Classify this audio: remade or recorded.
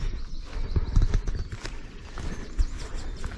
recorded